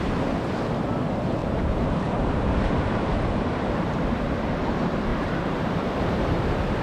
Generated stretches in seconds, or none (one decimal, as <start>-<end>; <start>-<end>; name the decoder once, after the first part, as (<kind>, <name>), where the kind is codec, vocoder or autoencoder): 1.4-4.0 (vocoder, BigVGAN v2); 5.1-6.8